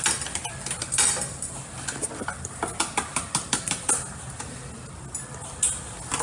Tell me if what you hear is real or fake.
real